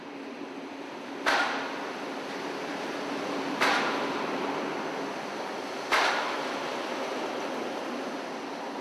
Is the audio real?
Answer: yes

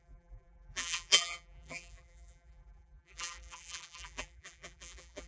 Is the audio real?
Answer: no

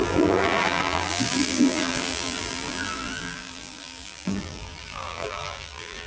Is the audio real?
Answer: no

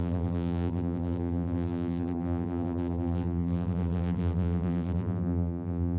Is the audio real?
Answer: no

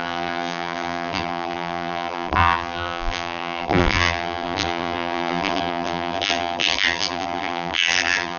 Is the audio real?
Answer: no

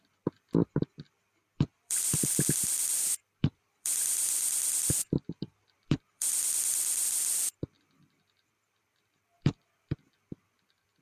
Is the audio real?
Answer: no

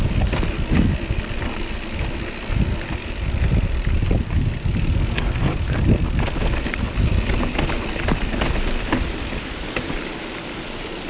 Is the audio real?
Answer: yes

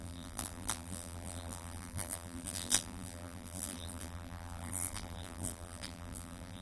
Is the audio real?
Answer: no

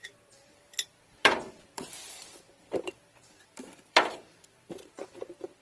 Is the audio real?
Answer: no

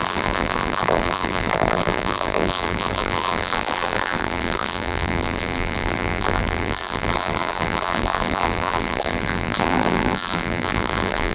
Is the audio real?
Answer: no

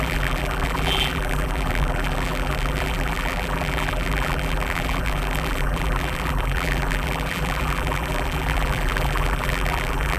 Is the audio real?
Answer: no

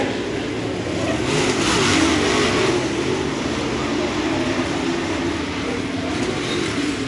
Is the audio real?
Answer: yes